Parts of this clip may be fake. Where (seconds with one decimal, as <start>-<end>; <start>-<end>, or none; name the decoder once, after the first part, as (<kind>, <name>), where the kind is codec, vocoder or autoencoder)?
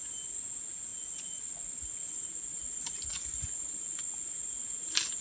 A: none